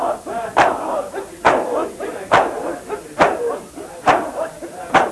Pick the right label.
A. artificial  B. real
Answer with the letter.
B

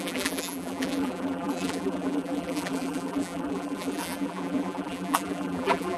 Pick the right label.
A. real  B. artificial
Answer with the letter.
B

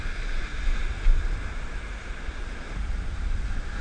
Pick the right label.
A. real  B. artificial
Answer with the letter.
A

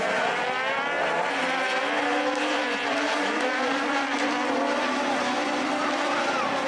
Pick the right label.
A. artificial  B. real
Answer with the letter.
B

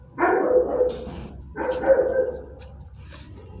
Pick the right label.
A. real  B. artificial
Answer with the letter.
A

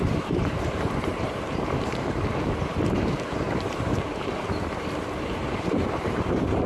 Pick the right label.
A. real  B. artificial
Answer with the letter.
B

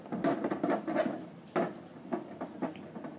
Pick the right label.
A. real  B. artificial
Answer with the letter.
A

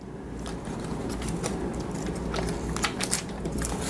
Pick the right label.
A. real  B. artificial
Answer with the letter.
A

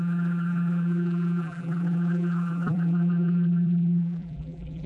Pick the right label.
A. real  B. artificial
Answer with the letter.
B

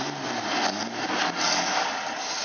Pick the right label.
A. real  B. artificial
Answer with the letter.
A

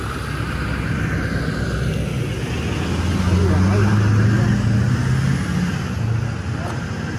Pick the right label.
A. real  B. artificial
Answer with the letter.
A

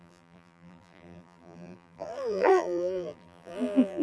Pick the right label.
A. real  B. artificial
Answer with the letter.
B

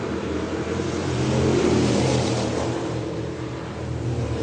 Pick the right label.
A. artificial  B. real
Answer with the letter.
A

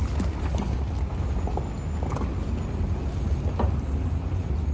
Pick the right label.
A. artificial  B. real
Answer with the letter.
B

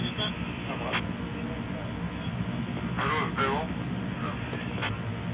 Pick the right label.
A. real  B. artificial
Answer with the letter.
A